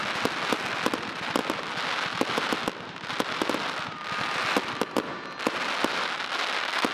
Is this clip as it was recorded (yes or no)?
yes